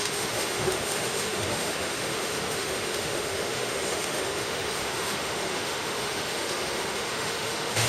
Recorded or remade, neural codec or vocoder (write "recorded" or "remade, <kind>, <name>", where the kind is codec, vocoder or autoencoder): remade, autoencoder, DAC-VAE